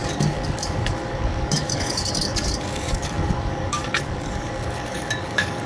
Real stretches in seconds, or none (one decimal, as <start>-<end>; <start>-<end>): none